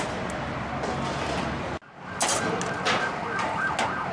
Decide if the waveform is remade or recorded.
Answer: recorded